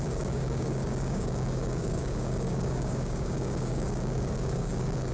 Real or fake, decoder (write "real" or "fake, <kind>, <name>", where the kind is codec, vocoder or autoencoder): fake, codec, DAC